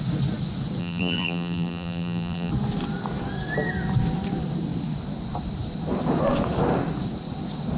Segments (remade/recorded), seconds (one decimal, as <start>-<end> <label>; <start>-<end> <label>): 0.0-0.8 recorded; 0.8-2.5 remade; 2.5-7.8 recorded